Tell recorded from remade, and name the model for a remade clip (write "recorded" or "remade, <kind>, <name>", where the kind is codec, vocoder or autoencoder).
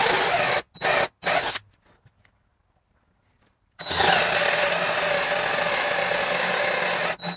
recorded